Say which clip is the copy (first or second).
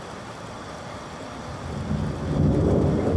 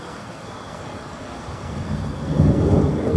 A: second